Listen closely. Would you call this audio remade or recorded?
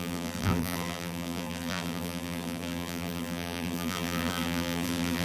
remade